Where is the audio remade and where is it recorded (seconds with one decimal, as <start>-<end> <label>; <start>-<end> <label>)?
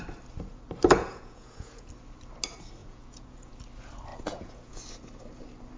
0.0-1.0 recorded; 1.0-1.9 remade; 1.9-2.8 recorded; 2.8-3.5 remade; 3.5-4.1 recorded; 4.1-4.8 remade; 4.8-5.8 recorded